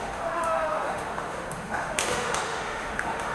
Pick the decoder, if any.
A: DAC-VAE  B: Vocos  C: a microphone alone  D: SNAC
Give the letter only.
A